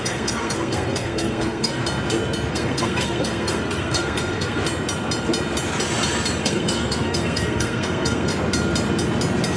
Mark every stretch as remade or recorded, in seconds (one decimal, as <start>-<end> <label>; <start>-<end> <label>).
0.0-1.8 remade; 1.8-2.5 recorded; 2.5-4.6 remade; 4.6-6.4 recorded; 6.4-8.3 remade; 8.3-9.6 recorded

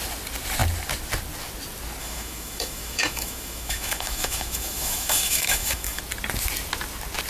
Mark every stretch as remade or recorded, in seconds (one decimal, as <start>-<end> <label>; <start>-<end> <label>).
0.0-2.0 recorded; 2.0-6.0 remade; 6.0-7.3 recorded

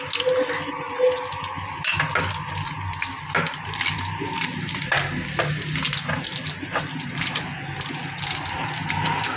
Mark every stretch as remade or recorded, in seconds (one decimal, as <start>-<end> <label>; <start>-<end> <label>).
0.0-3.5 recorded; 3.5-4.9 remade; 4.9-9.4 recorded